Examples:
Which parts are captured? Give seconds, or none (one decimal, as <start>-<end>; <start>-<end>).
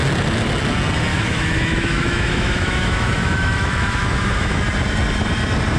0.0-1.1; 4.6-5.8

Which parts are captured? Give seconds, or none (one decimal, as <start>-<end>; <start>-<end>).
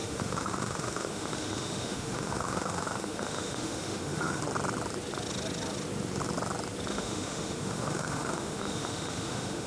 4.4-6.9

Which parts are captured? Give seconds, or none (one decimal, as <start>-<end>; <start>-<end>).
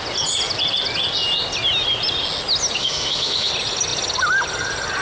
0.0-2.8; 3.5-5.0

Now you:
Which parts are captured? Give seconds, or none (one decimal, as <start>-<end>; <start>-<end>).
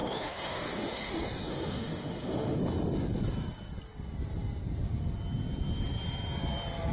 1.1-1.5; 2.6-6.9